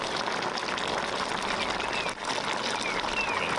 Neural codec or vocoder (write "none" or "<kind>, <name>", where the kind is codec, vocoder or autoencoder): none